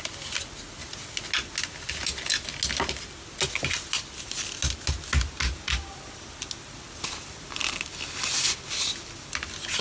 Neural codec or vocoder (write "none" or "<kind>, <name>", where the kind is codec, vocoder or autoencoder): none